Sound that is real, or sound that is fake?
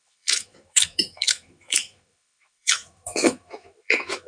fake